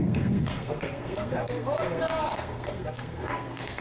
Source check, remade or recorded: remade